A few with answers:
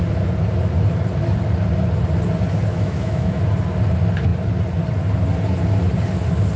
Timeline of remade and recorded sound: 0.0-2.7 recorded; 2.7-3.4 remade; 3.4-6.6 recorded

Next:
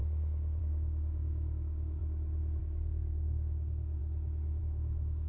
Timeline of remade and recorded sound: 0.0-0.6 recorded; 0.6-2.0 remade; 2.0-2.6 recorded; 2.6-4.0 remade; 4.0-4.6 recorded; 4.6-5.3 remade

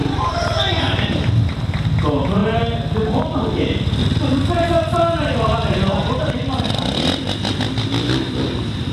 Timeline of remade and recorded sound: 0.0-6.0 recorded; 6.0-7.4 remade; 7.4-8.9 recorded

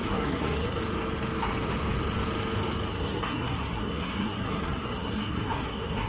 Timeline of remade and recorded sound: 0.0-0.8 remade; 0.8-2.9 recorded; 2.9-6.1 remade

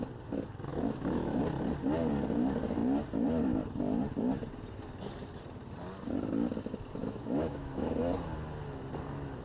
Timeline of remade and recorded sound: 0.0-0.7 recorded; 0.7-1.4 remade; 1.4-7.0 recorded; 7.0-8.0 remade; 8.0-9.4 recorded

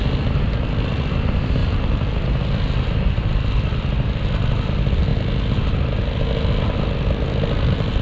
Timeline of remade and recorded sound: 0.0-8.0 recorded

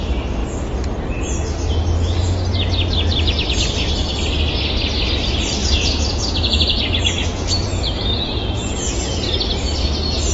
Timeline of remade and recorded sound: 0.0-5.6 recorded; 5.6-6.8 remade; 6.8-7.2 recorded; 7.2-9.1 remade; 9.1-10.3 recorded